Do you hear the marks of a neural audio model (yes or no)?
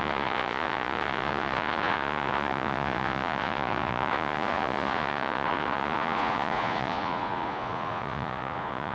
yes